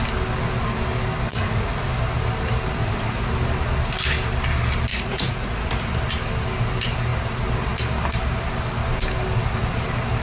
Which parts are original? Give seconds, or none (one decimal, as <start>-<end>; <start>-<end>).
0.0-1.3; 1.9-2.8; 3.3-4.9; 5.6-10.2